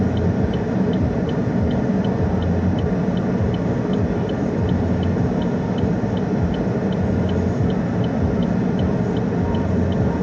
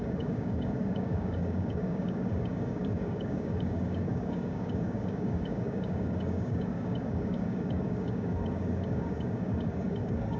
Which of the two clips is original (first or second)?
first